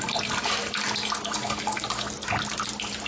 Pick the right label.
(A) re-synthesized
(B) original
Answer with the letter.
B